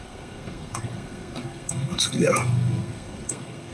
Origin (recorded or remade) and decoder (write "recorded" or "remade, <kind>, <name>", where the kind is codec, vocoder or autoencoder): remade, codec, SNAC